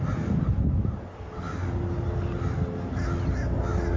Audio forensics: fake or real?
real